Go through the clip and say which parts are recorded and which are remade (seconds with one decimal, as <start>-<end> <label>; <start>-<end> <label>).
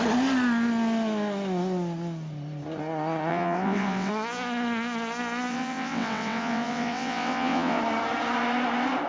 0.0-3.3 recorded; 3.3-4.1 remade; 4.1-5.5 recorded; 5.5-7.8 remade; 7.8-9.1 recorded